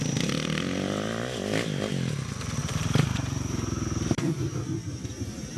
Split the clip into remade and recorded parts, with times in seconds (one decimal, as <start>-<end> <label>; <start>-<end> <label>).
0.0-2.6 recorded; 2.6-5.6 remade